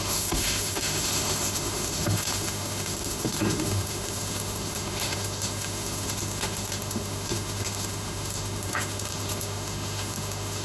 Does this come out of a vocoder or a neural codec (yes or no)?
yes